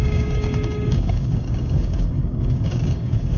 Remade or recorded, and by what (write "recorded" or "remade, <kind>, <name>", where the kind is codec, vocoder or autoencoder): remade, codec, DAC